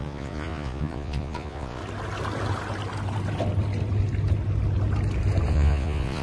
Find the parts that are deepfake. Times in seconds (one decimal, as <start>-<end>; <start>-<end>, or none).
0.0-1.8; 5.5-6.2